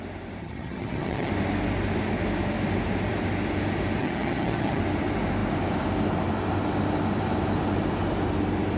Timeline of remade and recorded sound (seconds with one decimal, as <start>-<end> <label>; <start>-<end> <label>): 0.0-0.4 recorded; 0.4-1.3 remade; 1.3-4.0 recorded; 4.0-4.8 remade; 4.8-8.8 recorded